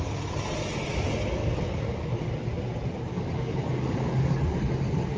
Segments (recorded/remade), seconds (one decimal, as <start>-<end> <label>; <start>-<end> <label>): 0.0-1.4 recorded; 1.4-2.1 remade; 2.1-3.1 recorded; 3.1-4.4 remade; 4.4-5.2 recorded